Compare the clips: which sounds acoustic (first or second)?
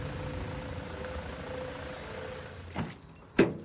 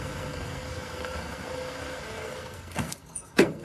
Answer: first